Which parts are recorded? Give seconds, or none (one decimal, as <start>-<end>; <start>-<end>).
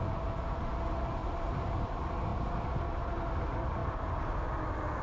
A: 0.0-1.2; 1.9-5.0